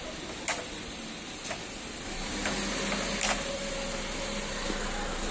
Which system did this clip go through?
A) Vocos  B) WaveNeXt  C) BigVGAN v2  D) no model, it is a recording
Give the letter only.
D